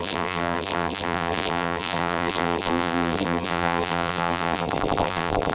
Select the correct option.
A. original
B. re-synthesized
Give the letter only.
B